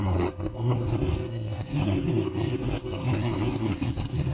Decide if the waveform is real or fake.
fake